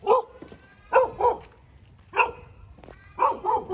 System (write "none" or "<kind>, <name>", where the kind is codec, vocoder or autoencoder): none